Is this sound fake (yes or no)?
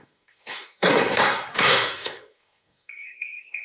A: yes